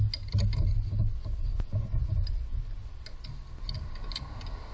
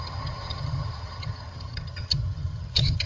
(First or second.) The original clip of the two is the first